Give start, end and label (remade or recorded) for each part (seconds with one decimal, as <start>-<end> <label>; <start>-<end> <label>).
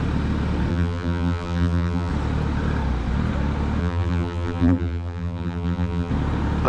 0.0-0.7 recorded; 0.7-2.1 remade; 2.1-3.8 recorded; 3.8-6.1 remade; 6.1-6.7 recorded